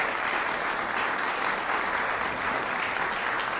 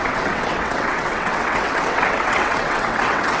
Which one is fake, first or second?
second